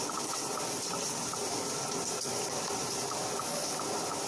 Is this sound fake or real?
real